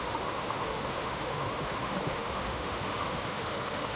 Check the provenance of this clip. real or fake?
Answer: fake